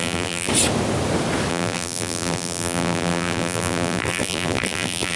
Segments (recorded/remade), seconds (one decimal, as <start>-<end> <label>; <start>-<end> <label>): 0.0-0.5 remade; 0.5-1.5 recorded; 1.5-5.2 remade